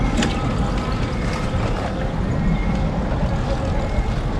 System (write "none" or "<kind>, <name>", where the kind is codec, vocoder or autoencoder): none